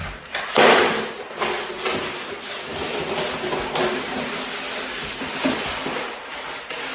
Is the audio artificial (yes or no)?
no